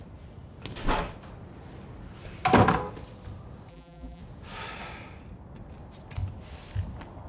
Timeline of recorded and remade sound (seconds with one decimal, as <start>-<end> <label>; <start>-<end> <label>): 0.0-3.7 recorded; 3.7-4.2 remade; 4.2-7.3 recorded

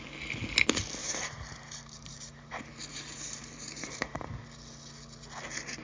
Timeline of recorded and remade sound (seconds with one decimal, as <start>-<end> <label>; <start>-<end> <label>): 0.0-1.0 recorded; 1.0-2.5 remade; 2.5-2.9 recorded; 2.9-4.3 remade; 4.3-5.8 recorded

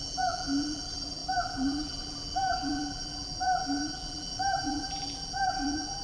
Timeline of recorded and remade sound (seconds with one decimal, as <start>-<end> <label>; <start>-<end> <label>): 0.0-6.0 remade

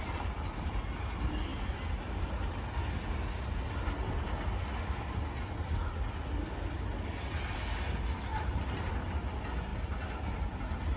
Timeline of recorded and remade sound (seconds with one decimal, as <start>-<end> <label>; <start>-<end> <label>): 0.0-8.3 recorded; 8.3-8.9 remade; 8.9-11.0 recorded

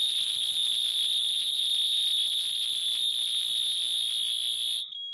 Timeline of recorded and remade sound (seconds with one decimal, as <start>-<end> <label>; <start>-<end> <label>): 0.0-5.1 recorded

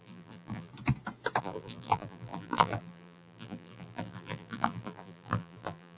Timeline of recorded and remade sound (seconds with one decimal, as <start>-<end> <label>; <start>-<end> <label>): 0.0-0.7 remade; 0.7-1.4 recorded; 1.4-6.0 remade

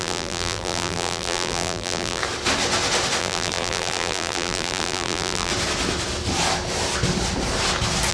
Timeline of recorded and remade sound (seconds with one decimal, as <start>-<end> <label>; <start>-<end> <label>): 0.0-2.2 remade; 2.2-3.2 recorded; 3.2-5.5 remade; 5.5-8.1 recorded